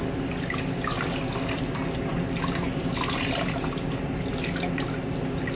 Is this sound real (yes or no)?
yes